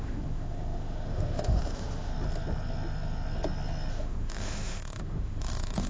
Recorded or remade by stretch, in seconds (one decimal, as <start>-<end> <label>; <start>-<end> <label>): 0.0-2.1 remade; 2.1-3.9 recorded; 3.9-5.9 remade